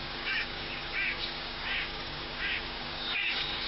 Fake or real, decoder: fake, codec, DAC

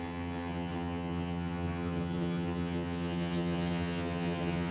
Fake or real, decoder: fake, vocoder, HiFi-GAN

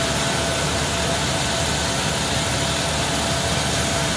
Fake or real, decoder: real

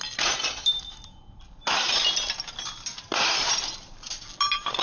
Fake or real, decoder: real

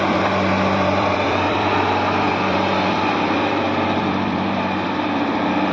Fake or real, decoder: fake, vocoder, BigVGAN v2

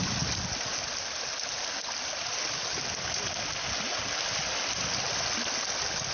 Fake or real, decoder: real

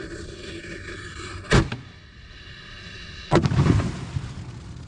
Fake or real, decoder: real